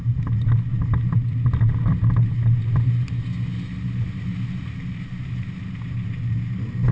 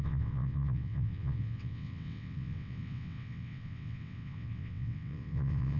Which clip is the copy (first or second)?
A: second